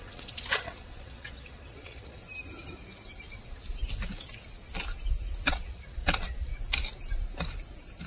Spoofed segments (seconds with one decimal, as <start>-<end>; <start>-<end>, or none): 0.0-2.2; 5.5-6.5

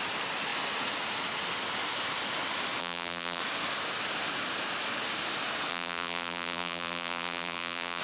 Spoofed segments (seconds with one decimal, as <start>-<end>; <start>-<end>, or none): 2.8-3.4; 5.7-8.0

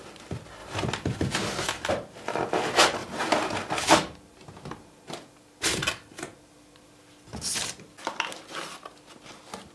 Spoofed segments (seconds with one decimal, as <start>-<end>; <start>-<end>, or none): none

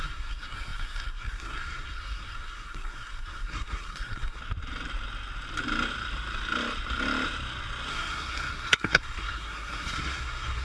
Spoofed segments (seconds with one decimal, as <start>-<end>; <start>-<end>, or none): 0.0-4.4; 7.9-10.6